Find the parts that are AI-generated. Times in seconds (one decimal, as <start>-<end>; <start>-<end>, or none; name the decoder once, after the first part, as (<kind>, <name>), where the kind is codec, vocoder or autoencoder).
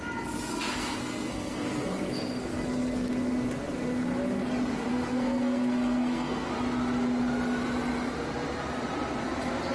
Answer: 0.5-3.1 (codec, SNAC); 4.9-6.5